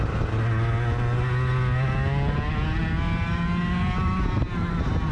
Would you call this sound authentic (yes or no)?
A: yes